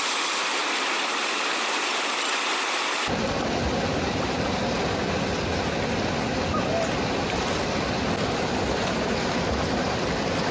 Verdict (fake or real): real